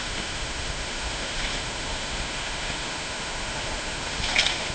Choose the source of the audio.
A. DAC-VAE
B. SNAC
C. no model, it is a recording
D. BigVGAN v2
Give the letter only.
A